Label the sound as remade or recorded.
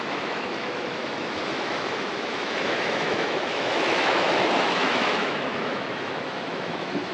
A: remade